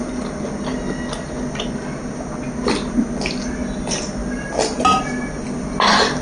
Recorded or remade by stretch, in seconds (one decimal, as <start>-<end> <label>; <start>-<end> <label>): 0.0-6.2 recorded